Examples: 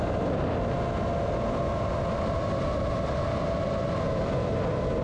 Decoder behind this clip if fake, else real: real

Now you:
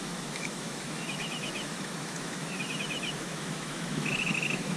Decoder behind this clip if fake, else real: fake, autoencoder, DAC-VAE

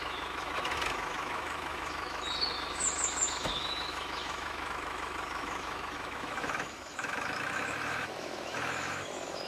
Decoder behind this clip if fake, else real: fake, autoencoder, DAC-VAE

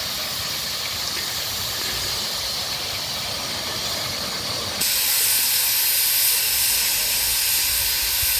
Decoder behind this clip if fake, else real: real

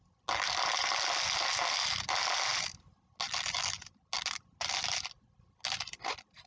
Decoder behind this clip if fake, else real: real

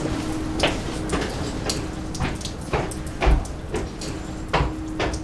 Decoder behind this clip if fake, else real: real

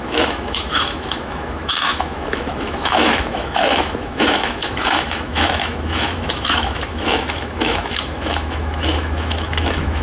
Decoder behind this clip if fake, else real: fake, autoencoder, DAC-VAE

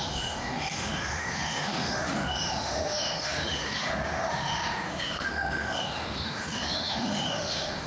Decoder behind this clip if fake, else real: fake, autoencoder, DAC-VAE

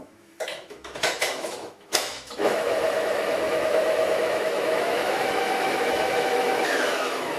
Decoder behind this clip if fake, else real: fake, autoencoder, DAC-VAE